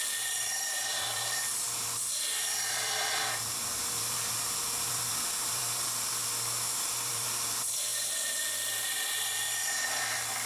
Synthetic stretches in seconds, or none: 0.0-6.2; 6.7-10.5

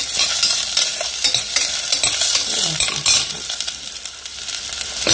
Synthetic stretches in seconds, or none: 0.9-4.0

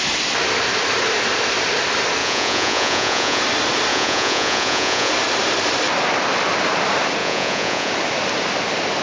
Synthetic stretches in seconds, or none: 2.2-3.4; 3.9-5.1; 7.2-7.9

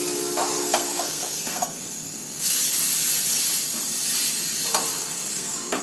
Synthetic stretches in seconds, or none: 0.6-2.6; 4.9-5.8

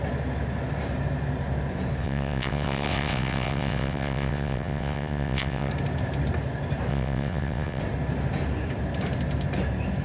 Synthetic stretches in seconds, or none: 2.0-5.7; 6.9-7.8